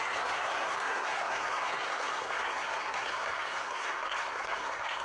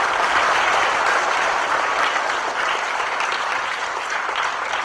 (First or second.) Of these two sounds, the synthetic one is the first